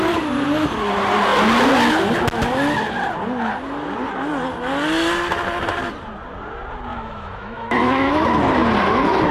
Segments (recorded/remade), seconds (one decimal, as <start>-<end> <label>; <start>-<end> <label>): 0.0-6.9 recorded; 6.9-8.1 remade; 8.1-9.3 recorded